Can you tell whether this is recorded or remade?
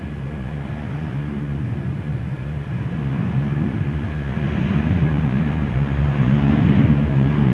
remade